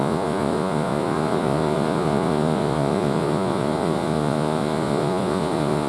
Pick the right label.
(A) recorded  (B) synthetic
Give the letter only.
B